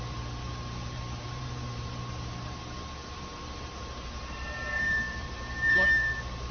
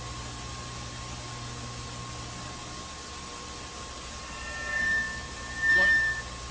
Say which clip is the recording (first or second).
second